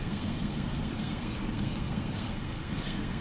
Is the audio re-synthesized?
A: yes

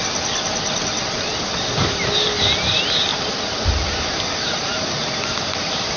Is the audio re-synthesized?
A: no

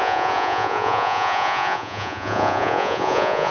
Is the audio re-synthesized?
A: yes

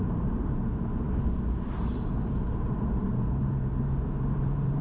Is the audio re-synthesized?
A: yes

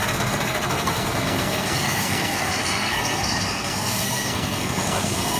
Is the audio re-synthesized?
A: yes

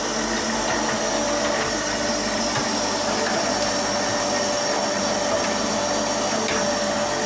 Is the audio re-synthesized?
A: no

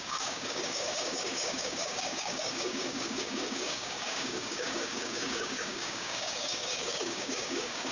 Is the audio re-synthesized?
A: yes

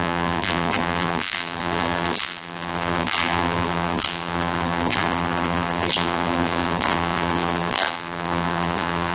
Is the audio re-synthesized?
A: yes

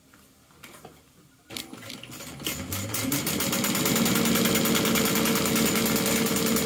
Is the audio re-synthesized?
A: no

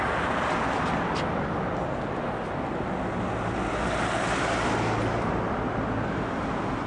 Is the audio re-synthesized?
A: no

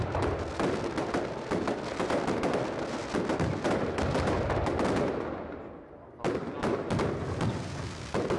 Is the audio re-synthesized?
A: no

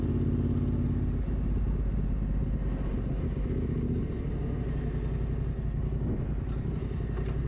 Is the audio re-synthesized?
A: no